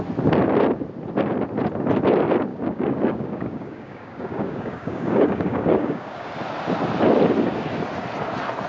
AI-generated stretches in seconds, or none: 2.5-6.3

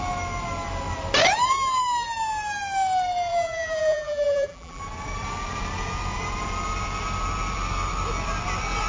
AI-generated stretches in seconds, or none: 3.3-4.8

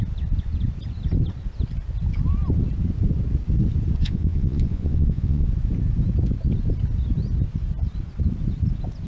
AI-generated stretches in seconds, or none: 4.0-5.5

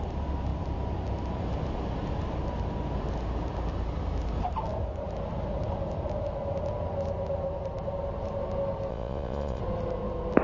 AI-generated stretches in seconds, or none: 8.9-9.6

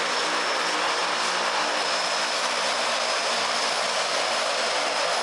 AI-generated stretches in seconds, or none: none

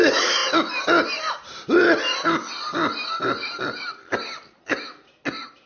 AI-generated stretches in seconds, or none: none

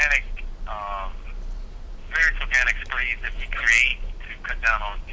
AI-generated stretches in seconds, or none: none

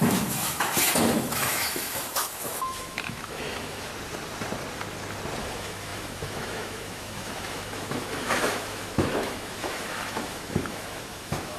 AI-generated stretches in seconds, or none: 0.0-3.9; 5.4-11.6